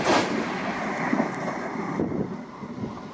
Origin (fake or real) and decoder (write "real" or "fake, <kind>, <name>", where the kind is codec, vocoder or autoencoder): real